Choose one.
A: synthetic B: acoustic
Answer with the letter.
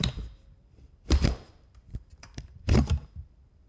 A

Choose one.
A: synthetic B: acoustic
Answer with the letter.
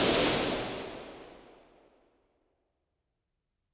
B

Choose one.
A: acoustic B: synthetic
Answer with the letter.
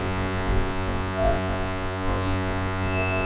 B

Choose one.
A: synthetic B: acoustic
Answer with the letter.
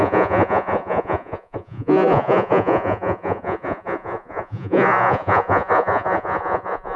A